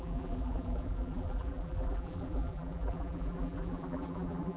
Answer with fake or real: fake